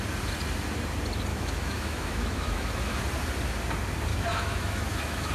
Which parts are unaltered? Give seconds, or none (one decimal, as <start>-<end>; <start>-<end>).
0.0-1.3; 3.0-4.1